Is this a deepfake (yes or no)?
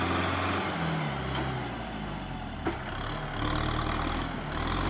no